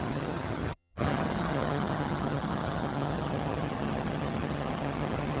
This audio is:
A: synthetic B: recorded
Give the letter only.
A